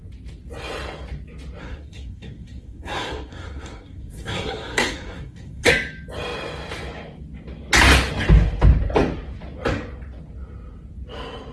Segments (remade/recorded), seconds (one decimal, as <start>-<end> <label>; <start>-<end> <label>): 0.0-1.6 recorded; 1.6-5.7 remade; 5.7-11.5 recorded

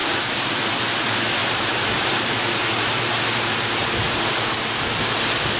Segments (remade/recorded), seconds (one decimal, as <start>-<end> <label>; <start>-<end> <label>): 0.0-0.8 remade; 0.8-1.4 recorded; 1.4-4.8 remade; 4.8-5.6 recorded

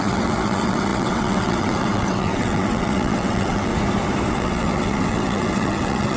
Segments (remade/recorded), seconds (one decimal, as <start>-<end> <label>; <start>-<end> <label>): 0.0-3.7 remade; 3.7-4.3 recorded; 4.3-6.2 remade

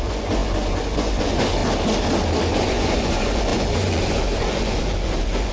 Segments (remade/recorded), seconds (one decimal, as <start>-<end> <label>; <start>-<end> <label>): 0.0-1.6 remade; 1.6-2.5 recorded; 2.5-5.5 remade

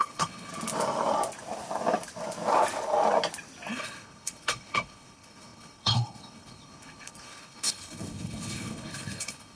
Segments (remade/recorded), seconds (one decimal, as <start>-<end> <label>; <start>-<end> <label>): 0.0-0.5 remade; 0.5-3.7 recorded; 3.7-9.6 remade

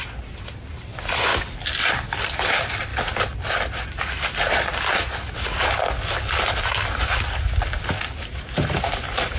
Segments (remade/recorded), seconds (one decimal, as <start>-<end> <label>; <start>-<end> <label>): 0.0-9.4 recorded

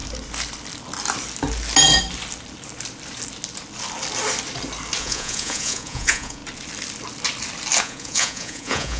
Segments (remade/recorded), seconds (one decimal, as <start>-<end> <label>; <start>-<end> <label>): 0.0-5.0 recorded; 5.0-6.4 remade; 6.4-7.8 recorded; 7.8-9.0 remade